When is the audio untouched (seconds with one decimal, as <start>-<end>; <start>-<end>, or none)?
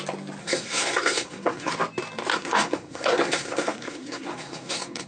0.0-0.4; 1.7-2.3